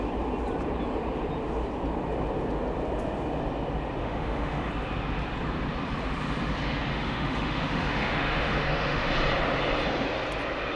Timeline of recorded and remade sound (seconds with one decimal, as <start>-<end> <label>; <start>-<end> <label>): 0.0-4.0 recorded; 4.0-4.7 remade; 4.7-6.9 recorded; 6.9-9.1 remade; 9.1-10.8 recorded